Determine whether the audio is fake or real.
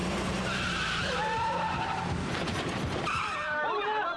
fake